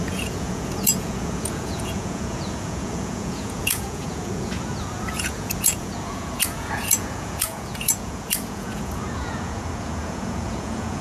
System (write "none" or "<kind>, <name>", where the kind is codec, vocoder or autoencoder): vocoder, Vocos